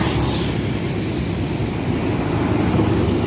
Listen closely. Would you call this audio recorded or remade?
recorded